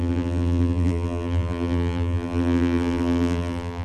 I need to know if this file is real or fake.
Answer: fake